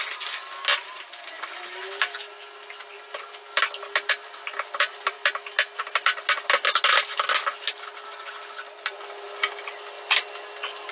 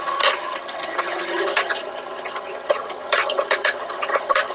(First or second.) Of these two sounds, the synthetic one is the second